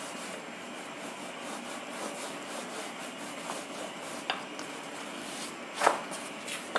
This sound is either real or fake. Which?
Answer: real